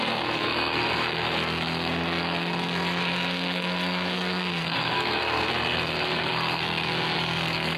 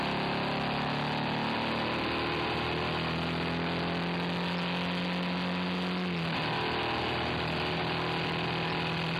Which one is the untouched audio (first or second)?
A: second